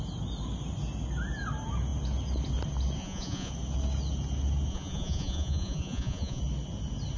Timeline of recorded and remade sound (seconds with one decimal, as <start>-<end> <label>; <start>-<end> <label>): 0.0-3.0 recorded; 3.0-3.5 remade; 3.5-4.7 recorded; 4.7-6.4 remade; 6.4-7.2 recorded